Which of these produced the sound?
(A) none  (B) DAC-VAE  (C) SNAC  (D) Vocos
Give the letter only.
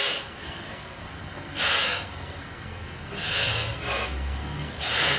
C